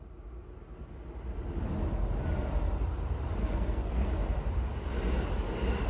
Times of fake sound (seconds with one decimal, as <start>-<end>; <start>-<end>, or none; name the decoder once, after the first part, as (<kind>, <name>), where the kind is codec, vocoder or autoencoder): 3.4-4.1 (codec, SNAC)